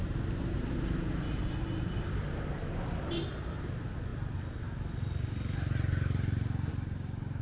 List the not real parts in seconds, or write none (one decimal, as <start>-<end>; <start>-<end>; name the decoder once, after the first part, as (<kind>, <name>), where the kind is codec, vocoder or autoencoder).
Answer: none